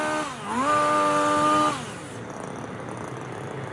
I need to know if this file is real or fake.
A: real